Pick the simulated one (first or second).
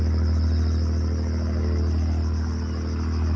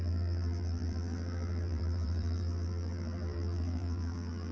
second